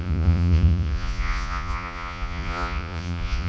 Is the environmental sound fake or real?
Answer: fake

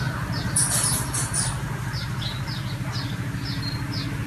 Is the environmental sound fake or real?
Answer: real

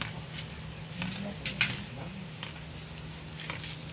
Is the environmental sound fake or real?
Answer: real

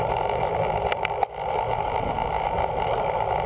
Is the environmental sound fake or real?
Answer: real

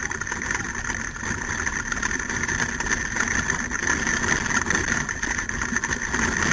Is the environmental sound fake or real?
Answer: real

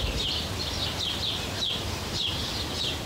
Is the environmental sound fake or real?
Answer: real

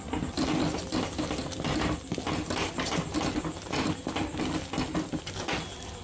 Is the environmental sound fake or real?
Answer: real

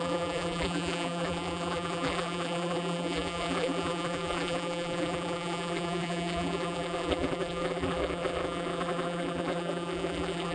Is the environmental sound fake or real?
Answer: fake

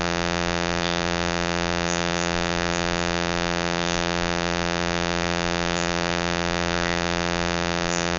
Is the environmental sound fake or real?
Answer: fake